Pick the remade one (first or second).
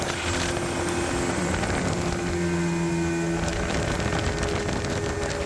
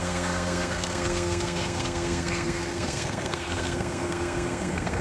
second